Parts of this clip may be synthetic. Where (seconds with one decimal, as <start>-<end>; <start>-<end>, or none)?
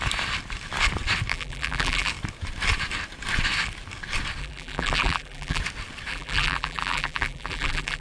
1.3-2.1; 4.4-5.6; 6.1-8.0